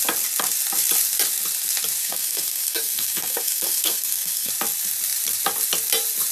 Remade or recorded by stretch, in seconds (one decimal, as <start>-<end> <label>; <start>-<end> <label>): 0.0-2.0 recorded; 2.0-4.5 remade; 4.5-6.3 recorded